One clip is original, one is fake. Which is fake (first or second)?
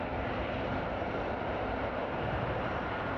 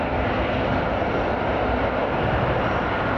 first